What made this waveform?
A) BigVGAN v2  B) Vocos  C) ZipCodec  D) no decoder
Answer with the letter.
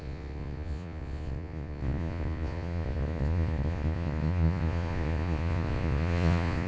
B